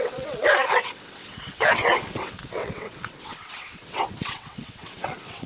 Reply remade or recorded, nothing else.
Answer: remade